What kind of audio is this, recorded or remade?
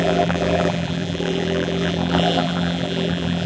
remade